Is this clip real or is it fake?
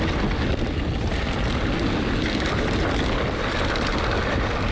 real